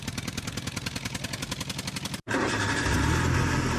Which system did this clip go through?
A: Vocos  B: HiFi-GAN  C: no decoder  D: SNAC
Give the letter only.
C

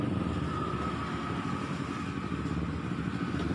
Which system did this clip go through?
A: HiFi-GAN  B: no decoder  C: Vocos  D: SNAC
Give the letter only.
B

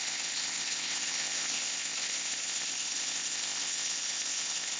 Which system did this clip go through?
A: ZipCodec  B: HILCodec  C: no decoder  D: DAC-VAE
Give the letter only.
A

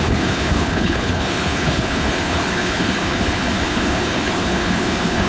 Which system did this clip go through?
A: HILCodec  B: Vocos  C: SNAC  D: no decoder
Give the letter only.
A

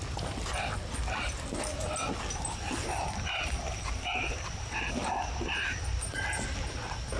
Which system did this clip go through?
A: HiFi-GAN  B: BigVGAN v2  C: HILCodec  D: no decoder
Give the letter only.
D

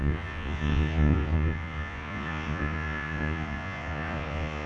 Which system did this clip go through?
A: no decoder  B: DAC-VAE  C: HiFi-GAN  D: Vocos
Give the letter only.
D